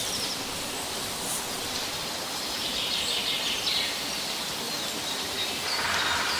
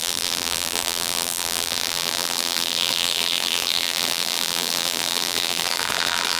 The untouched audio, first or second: first